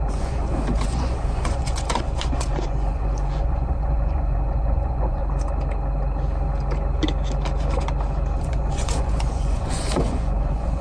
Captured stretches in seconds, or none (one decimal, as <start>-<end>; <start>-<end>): 5.2-8.4